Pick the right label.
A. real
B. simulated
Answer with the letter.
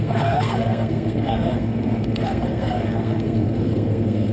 B